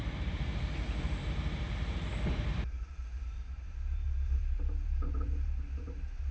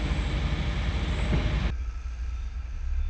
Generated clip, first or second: first